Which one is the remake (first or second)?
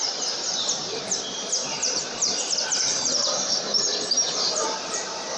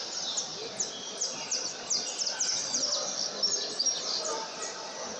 first